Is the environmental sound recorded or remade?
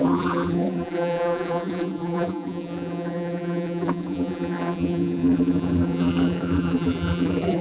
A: remade